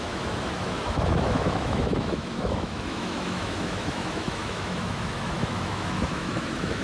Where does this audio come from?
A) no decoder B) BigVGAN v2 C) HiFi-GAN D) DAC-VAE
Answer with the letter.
D